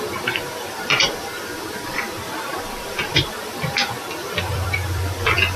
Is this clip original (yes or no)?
no